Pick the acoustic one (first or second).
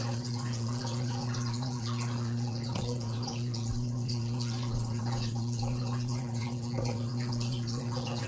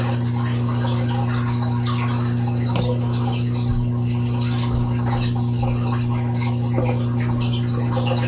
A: second